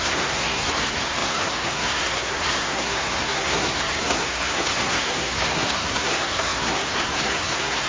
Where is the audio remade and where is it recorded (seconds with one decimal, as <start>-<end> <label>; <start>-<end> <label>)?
0.0-7.9 remade